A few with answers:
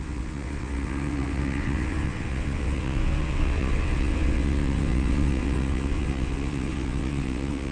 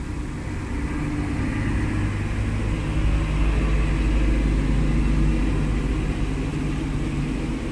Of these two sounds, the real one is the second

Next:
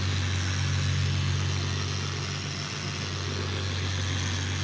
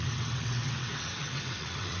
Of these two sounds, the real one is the first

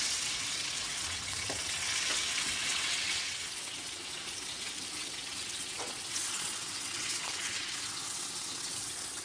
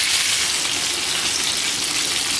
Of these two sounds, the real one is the second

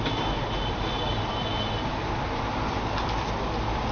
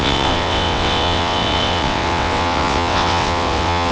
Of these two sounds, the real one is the first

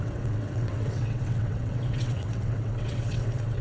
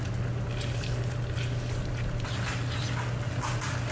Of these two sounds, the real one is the second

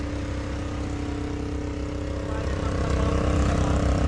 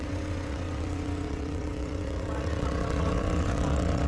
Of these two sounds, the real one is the first